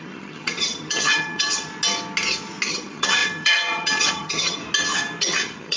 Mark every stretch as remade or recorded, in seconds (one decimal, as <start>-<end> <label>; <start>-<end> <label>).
0.0-1.7 remade; 1.7-2.7 recorded; 2.7-4.6 remade; 4.6-5.2 recorded; 5.2-5.8 remade